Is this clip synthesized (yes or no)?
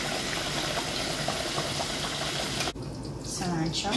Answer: no